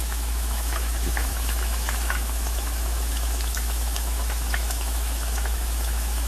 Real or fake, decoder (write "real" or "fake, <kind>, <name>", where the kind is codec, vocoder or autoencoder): fake, autoencoder, DAC-VAE